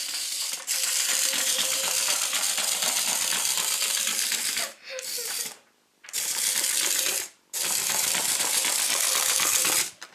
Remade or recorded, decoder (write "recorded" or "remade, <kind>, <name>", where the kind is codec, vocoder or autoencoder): remade, vocoder, BigVGAN v2